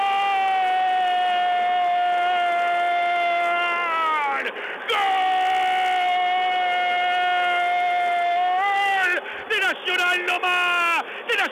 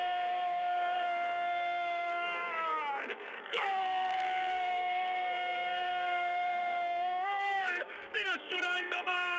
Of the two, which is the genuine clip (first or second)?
first